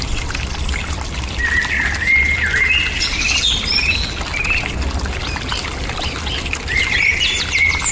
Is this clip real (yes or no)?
yes